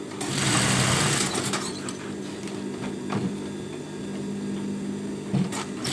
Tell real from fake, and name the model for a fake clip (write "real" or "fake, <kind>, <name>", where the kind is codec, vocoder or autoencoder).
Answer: real